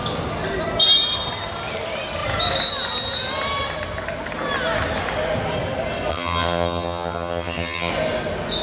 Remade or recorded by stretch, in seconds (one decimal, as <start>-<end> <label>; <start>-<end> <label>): 0.0-6.1 recorded; 6.1-7.9 remade; 7.9-8.6 recorded